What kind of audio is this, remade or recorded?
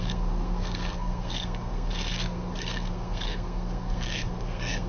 remade